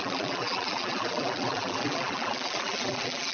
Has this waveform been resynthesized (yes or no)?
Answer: yes